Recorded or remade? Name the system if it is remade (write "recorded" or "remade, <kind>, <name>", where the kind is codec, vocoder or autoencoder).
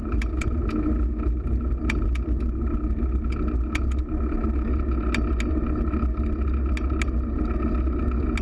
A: recorded